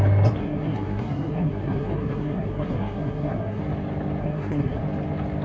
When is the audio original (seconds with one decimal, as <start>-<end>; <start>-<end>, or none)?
0.0-0.4; 3.6-4.2; 4.8-5.4